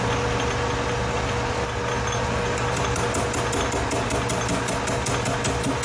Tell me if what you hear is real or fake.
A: real